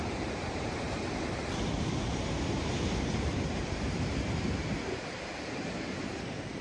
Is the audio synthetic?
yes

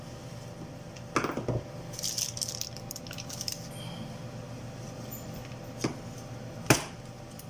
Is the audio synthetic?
no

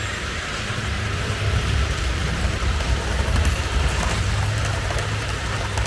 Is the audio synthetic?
yes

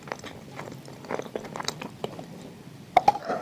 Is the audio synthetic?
yes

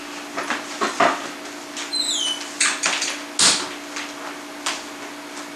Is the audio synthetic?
no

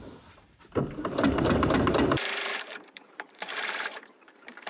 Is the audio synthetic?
yes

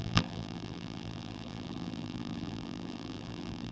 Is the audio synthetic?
yes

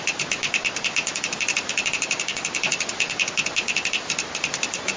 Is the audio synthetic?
no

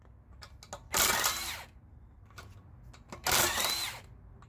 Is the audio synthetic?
no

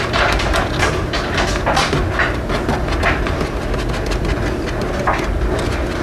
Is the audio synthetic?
no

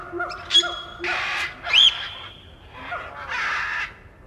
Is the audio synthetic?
no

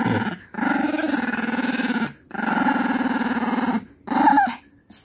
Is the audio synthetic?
no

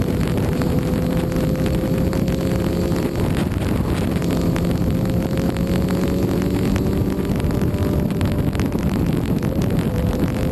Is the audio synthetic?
no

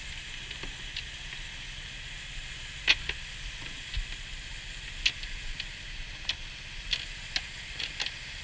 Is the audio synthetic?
no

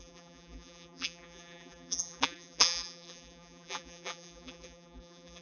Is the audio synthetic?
yes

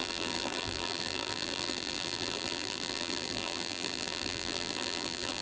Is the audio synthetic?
yes